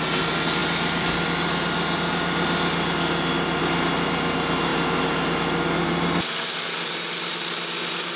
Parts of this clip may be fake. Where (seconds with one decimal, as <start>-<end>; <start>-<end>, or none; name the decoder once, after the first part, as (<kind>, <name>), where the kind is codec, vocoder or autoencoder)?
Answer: none